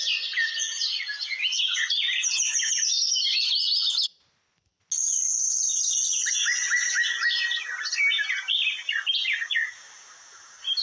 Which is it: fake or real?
real